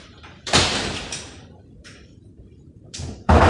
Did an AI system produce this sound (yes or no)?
yes